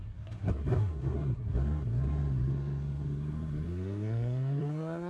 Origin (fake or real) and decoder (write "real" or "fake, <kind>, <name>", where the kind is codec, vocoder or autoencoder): fake, codec, SNAC